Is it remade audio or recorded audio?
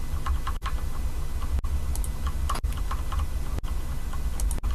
recorded